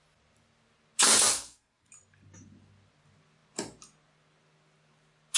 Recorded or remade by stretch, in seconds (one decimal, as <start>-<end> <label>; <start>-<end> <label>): 0.0-1.3 recorded; 1.3-1.9 remade; 1.9-5.4 recorded